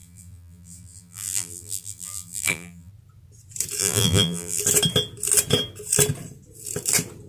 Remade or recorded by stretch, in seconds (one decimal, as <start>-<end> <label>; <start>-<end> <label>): 0.0-2.9 remade; 2.9-3.8 recorded; 3.8-4.6 remade; 4.6-7.3 recorded